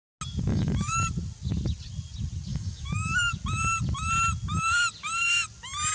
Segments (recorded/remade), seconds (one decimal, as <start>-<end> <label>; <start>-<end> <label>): 0.0-0.5 recorded; 0.5-1.0 remade; 1.0-2.5 recorded; 2.5-3.3 remade; 3.3-5.9 recorded